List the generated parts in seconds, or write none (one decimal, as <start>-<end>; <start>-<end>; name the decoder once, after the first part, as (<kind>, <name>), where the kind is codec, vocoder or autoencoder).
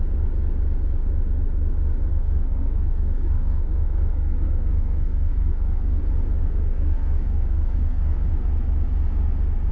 2.1-6.0 (codec, SNAC); 6.4-8.3